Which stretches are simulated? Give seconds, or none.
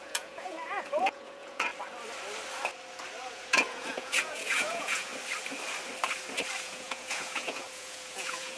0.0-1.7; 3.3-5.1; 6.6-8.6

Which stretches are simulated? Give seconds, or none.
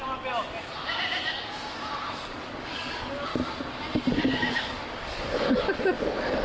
2.0-3.3; 4.1-6.4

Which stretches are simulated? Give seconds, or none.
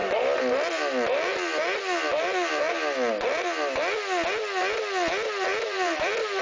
5.5-6.4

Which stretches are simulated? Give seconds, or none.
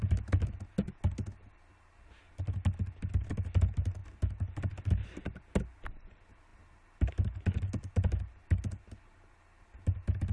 none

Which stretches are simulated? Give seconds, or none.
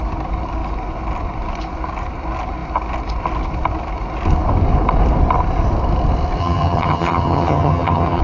6.4-8.2